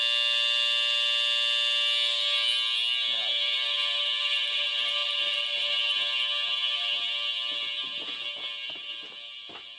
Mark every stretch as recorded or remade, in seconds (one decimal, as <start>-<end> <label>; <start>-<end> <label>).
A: 0.0-9.8 recorded